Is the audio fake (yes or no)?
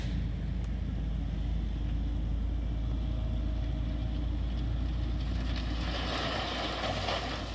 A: no